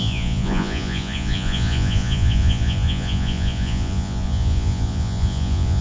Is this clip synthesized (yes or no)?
yes